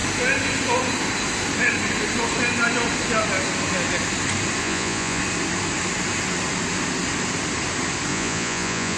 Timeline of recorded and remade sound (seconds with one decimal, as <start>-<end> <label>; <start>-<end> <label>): 0.0-4.6 recorded; 4.6-5.2 remade; 5.2-8.1 recorded; 8.1-9.0 remade